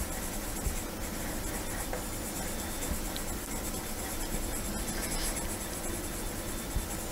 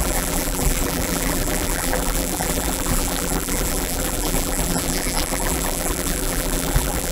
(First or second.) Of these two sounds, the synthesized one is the second